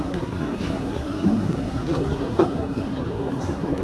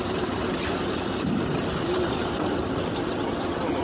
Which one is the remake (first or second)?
first